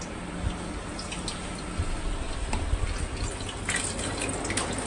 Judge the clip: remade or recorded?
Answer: recorded